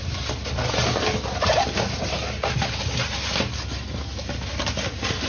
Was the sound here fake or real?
real